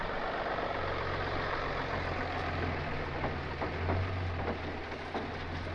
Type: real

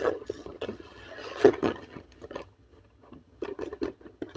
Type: fake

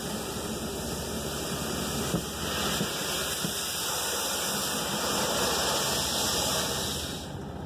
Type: real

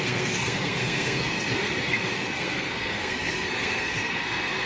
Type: fake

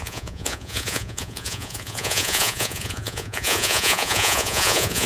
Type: fake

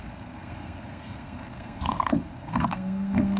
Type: fake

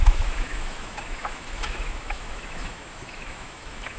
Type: fake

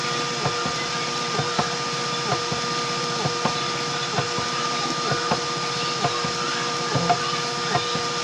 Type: real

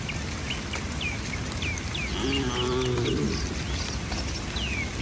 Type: real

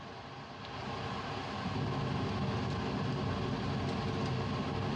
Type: real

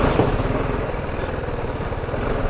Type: real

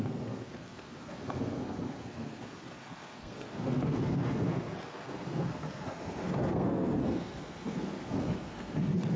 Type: fake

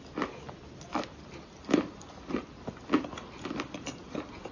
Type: real